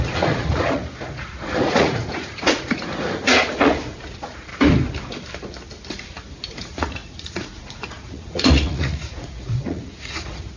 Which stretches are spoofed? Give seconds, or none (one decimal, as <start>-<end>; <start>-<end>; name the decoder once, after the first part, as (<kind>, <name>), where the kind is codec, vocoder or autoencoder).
0.0-4.5 (vocoder, Vocos); 6.5-10.6